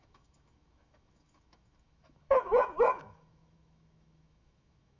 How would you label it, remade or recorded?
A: remade